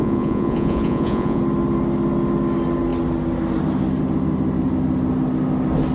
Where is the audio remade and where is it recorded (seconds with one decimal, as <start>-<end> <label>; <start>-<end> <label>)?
0.0-1.4 remade; 1.4-5.9 recorded